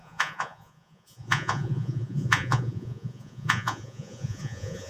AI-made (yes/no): yes